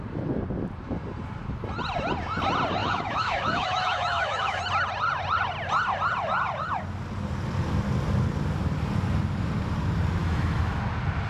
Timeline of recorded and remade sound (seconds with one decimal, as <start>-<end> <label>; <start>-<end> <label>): 0.0-2.8 recorded; 2.8-4.6 remade; 4.6-10.2 recorded; 10.2-10.8 remade; 10.8-11.3 recorded